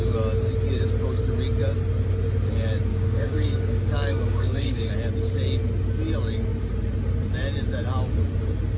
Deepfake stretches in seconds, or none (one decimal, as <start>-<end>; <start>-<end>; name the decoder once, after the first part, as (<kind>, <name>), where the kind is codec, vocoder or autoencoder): 2.9-4.9 (codec, DAC)

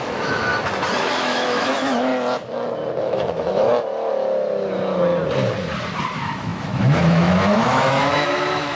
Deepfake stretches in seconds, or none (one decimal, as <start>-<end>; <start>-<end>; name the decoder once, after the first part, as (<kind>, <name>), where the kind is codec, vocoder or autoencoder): 0.0-0.5 (autoencoder, DAC-VAE); 1.1-2.1; 3.0-3.7; 6.1-8.7

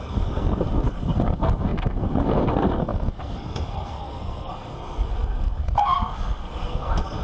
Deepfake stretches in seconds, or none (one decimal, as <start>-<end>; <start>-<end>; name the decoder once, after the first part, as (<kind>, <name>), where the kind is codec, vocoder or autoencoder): 0.0-7.2 (codec, SNAC)

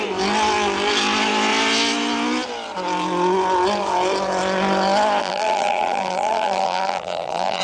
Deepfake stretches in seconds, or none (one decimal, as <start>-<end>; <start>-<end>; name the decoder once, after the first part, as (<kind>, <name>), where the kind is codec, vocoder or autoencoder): 5.2-7.6 (vocoder, BigVGAN v2)